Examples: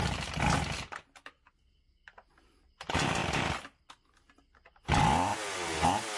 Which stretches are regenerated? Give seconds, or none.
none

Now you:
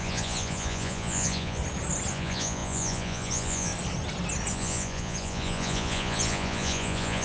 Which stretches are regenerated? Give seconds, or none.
0.0-1.6 (vocoder, Vocos); 2.1-3.7; 4.5-7.2

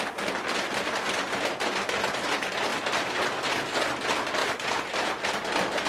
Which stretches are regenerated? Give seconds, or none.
none

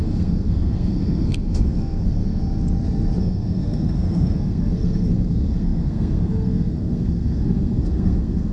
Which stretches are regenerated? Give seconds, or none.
0.0-2.4 (codec, SNAC); 3.2-8.5

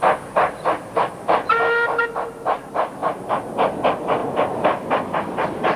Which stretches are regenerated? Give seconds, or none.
4.2-5.8 (vocoder, BigVGAN v2)

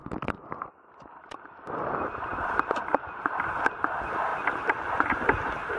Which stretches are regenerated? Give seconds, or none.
0.0-0.7 (vocoder, BigVGAN v2); 2.3-3.7; 4.3-5.8